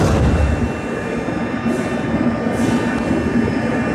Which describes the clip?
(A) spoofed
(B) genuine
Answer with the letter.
B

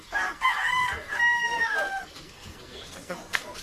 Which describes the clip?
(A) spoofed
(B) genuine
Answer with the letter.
A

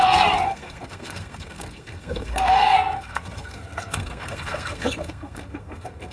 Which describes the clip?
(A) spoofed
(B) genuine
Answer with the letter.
A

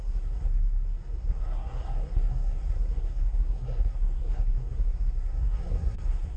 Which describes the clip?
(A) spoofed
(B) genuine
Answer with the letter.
A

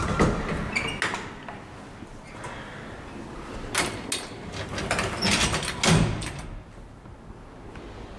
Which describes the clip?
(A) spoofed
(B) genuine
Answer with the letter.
B